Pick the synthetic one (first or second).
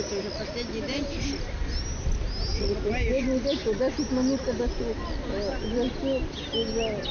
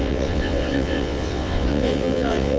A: second